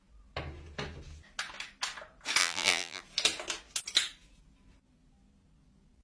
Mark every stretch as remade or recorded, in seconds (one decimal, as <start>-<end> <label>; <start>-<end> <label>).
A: 0.0-2.4 recorded; 2.4-3.0 remade; 3.0-6.0 recorded